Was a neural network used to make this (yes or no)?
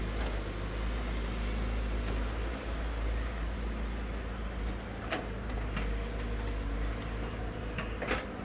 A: no